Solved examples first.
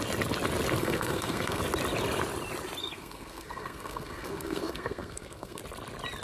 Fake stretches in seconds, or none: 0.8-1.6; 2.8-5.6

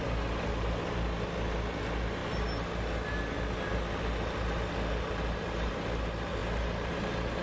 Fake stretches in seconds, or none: none

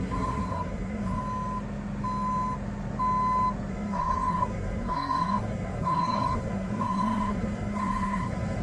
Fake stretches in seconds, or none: 0.0-1.2; 3.7-8.6

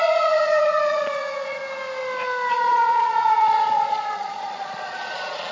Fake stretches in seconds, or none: 0.0-1.6; 2.5-5.5

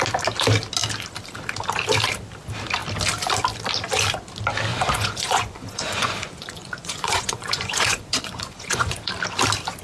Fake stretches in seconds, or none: 4.7-9.1

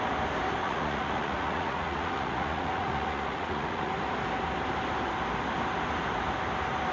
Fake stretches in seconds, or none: 0.6-3.9

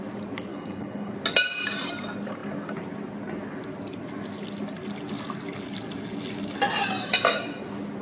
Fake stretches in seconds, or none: 0.5-1.1

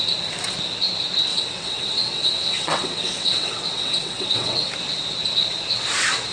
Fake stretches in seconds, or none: 1.3-4.7